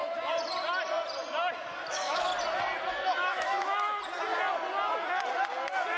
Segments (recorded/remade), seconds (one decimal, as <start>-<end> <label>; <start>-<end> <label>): 0.0-1.9 recorded; 1.9-2.3 remade; 2.3-2.9 recorded; 2.9-3.9 remade; 3.9-6.0 recorded